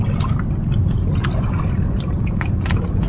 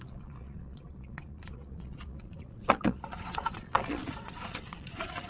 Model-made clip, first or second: second